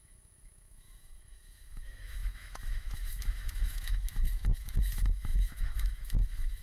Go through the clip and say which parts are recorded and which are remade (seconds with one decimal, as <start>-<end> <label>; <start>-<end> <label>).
0.0-6.6 remade